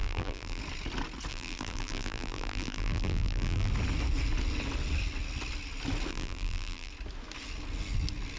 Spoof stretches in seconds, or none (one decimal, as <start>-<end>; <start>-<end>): 0.0-0.6; 1.3-3.7; 6.1-6.9